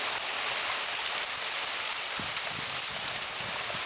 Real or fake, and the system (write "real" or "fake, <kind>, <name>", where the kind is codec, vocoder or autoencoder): real